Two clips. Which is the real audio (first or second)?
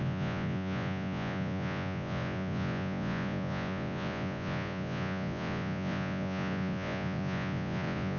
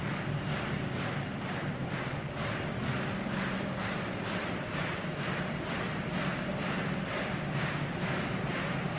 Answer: second